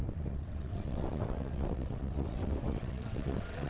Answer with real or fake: fake